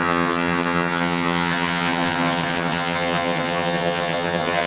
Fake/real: fake